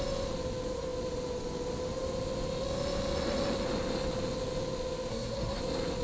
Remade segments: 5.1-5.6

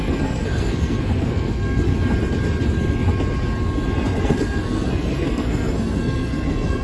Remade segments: 0.0-1.9; 4.2-6.8